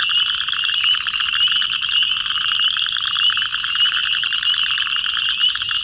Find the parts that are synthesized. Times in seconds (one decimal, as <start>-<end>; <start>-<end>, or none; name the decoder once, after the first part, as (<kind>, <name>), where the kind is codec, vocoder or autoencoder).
none